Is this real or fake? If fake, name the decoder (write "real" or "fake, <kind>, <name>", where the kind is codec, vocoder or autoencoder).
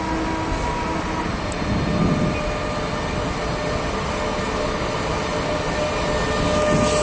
real